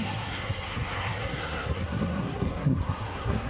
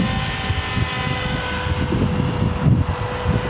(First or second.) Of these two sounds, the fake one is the first